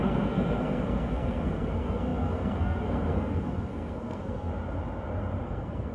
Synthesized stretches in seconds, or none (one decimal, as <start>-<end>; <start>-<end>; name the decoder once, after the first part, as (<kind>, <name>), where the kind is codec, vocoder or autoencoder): 0.0-4.5 (codec, SNAC); 5.4-5.9